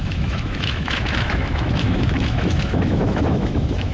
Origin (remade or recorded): remade